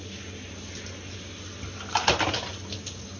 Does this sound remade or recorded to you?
recorded